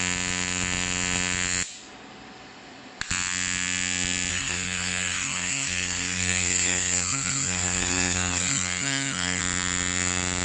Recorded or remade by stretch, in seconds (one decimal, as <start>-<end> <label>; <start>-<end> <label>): 0.0-4.3 recorded; 4.3-9.4 remade; 9.4-10.4 recorded